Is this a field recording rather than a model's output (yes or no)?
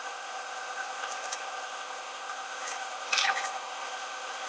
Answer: no